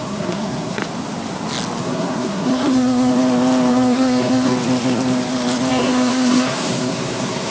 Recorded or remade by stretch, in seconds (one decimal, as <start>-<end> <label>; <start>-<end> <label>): 0.0-0.8 remade; 0.8-1.8 recorded; 1.8-3.1 remade; 3.1-3.7 recorded; 3.7-4.5 remade; 4.5-5.7 recorded; 5.7-7.5 remade